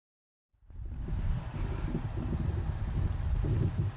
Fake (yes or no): no